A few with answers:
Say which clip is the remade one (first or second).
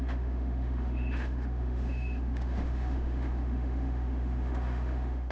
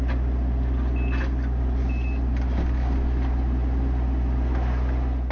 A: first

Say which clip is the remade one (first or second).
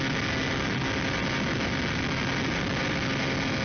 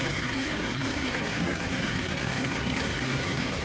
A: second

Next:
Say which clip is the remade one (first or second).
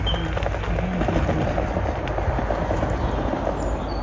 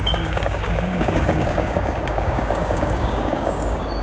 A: second